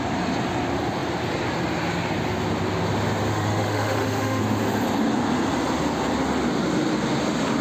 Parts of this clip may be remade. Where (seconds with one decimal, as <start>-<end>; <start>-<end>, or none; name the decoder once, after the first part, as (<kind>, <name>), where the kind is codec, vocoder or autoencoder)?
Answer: 3.3-4.4 (autoencoder, DAC-VAE)